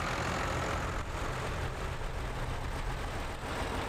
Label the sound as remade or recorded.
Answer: recorded